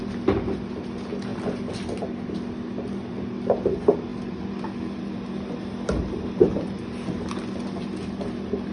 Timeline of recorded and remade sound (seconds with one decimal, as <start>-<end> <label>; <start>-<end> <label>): 0.0-8.7 recorded